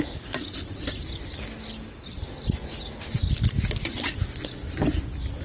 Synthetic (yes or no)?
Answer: no